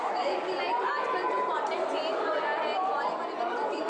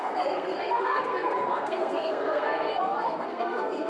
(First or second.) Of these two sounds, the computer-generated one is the second